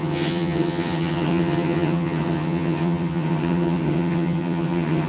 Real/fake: fake